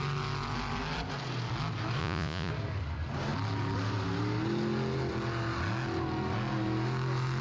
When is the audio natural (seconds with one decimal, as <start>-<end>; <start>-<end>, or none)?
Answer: 0.0-2.0; 2.5-7.4